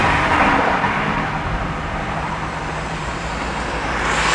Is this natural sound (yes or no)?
no